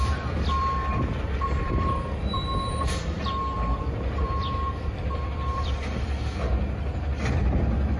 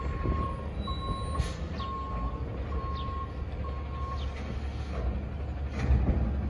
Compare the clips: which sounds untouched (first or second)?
second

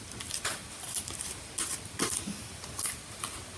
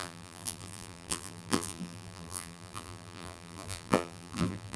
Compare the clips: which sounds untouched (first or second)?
first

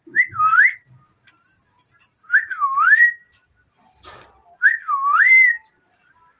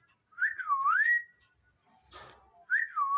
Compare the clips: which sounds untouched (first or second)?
second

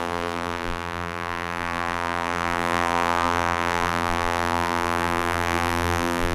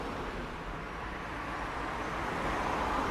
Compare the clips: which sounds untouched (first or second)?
second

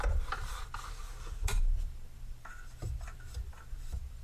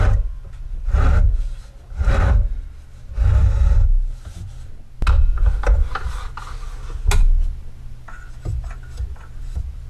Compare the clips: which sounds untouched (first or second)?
second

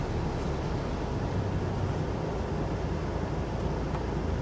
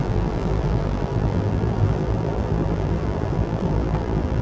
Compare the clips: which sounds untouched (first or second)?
first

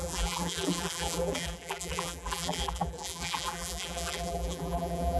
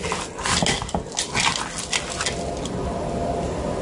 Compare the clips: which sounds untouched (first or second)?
second